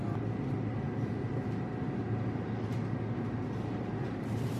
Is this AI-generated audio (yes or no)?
no